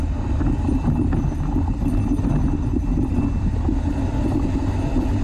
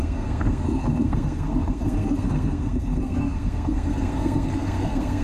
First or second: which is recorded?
first